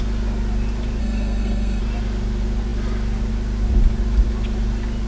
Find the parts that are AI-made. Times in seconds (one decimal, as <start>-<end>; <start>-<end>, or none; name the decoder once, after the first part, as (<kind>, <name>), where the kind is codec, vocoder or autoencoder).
1.0-1.8 (codec, SNAC)